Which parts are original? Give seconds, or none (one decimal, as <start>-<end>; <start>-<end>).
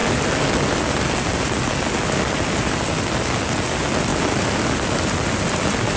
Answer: 0.0-6.0